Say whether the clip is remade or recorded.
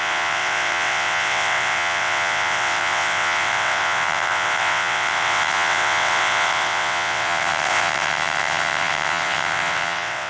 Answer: remade